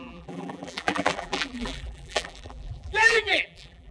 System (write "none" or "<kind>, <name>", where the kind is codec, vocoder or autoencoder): vocoder, BigVGAN v2